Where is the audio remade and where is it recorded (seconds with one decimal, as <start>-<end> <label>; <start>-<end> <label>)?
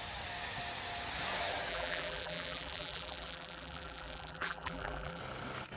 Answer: 0.0-1.7 recorded; 1.7-5.2 remade; 5.2-5.8 recorded